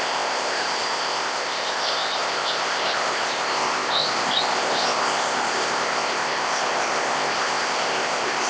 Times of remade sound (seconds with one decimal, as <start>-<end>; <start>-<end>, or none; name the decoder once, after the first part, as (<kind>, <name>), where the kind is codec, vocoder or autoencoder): 0.0-8.5 (codec, ZipCodec)